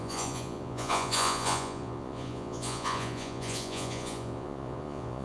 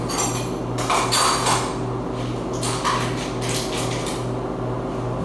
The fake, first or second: first